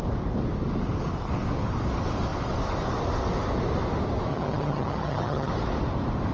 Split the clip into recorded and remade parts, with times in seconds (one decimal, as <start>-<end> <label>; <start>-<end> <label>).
0.0-4.3 recorded; 4.3-5.5 remade; 5.5-6.3 recorded